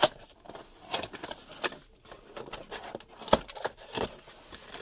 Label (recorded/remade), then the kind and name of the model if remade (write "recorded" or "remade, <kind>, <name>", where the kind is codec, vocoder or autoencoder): recorded